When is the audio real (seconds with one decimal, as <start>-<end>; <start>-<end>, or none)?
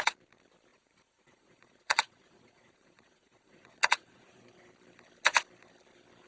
0.0-0.7; 4.4-6.3